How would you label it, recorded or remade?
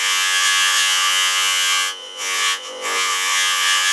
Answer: remade